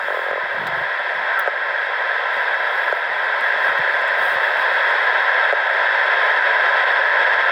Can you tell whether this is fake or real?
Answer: real